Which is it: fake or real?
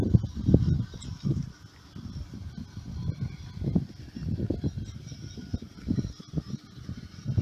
real